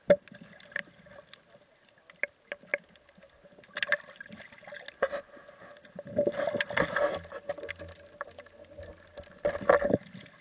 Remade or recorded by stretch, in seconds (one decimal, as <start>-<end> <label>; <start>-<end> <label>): 0.0-10.4 recorded